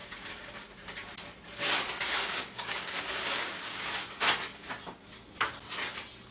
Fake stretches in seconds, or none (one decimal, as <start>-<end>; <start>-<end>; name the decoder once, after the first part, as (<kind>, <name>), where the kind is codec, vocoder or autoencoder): 0.0-0.7 (codec, DAC); 2.1-3.8